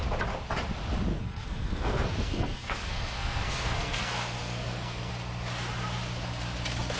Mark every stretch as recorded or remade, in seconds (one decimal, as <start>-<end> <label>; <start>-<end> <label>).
0.0-1.1 recorded; 1.1-5.1 remade; 5.1-7.0 recorded